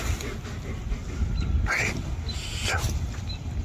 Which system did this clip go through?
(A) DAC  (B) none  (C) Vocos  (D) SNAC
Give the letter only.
B